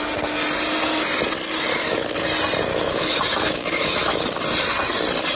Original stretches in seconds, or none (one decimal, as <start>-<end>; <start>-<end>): 0.0-1.7; 2.2-2.7; 4.3-5.3